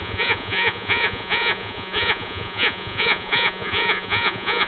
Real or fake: fake